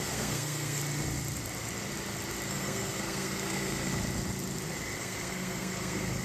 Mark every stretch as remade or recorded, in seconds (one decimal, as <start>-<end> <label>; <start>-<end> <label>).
0.0-0.8 remade; 0.8-2.5 recorded; 2.5-3.9 remade; 3.9-5.0 recorded; 5.0-6.2 remade

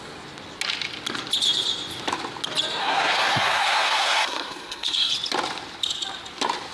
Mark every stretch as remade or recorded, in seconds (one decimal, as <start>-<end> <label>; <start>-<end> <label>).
0.0-2.8 recorded; 2.8-5.1 remade; 5.1-6.7 recorded

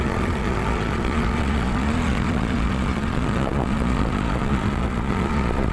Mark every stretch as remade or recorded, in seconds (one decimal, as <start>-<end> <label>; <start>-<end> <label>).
0.0-5.7 remade

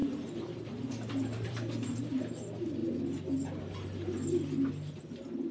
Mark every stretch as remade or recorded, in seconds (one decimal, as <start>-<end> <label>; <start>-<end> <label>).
0.0-2.2 remade; 2.2-5.5 recorded